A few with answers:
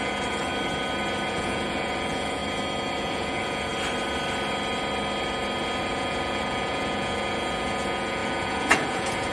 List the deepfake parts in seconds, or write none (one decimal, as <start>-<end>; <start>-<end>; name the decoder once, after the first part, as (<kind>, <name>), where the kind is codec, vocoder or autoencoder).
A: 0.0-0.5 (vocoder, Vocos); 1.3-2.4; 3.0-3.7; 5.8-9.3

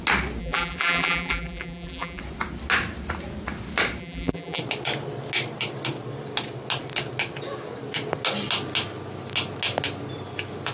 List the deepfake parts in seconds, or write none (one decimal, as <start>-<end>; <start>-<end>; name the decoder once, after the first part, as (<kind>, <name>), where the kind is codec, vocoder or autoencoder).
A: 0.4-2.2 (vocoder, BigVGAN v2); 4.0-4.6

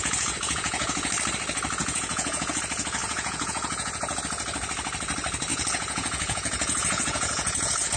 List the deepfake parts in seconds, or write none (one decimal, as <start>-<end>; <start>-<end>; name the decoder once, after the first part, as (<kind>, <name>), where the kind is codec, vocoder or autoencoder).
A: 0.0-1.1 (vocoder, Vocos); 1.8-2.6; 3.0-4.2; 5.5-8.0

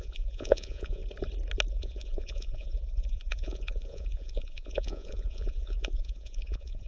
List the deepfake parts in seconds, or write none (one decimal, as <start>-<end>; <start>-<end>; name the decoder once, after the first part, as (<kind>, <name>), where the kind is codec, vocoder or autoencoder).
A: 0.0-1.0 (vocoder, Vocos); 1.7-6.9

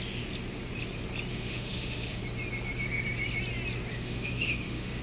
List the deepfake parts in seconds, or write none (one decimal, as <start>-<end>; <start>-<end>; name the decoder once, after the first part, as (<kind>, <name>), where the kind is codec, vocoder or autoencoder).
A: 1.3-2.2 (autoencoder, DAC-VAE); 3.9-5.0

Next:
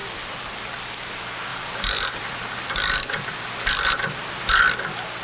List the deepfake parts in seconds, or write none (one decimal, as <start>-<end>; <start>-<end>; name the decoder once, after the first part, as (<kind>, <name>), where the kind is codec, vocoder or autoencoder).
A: 0.0-0.6 (vocoder, BigVGAN v2); 1.5-4.6

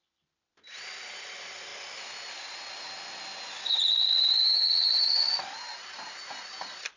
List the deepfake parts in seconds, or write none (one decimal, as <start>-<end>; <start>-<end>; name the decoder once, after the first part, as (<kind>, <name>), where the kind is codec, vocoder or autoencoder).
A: 0.0-1.7 (vocoder, BigVGAN v2); 4.7-7.0

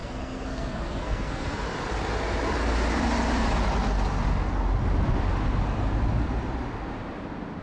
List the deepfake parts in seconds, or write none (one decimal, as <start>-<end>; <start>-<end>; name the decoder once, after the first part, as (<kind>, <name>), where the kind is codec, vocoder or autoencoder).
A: 0.0-1.6 (codec, SNAC)